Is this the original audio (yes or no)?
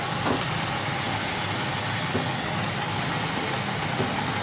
yes